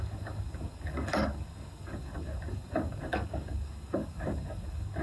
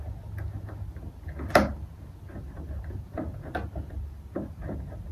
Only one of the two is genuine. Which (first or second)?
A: second